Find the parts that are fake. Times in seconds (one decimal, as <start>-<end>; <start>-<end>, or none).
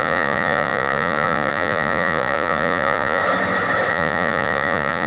0.0-3.2; 3.9-5.1